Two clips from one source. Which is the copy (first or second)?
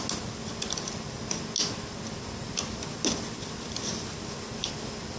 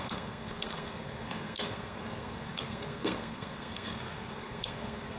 second